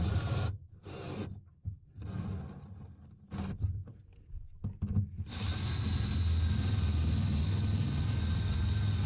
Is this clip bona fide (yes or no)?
yes